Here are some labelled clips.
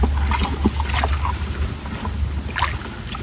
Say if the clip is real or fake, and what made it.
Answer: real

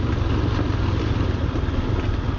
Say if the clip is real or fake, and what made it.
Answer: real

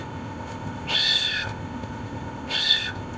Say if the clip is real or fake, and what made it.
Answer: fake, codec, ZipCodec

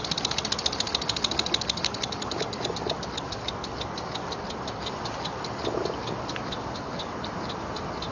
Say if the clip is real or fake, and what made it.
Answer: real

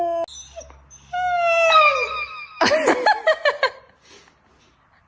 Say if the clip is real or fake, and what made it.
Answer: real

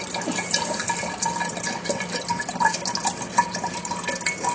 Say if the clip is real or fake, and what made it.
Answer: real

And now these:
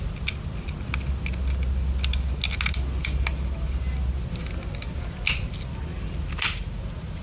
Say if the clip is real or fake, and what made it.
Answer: real